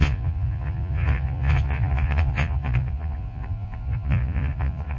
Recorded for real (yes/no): no